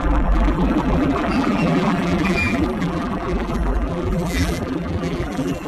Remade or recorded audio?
remade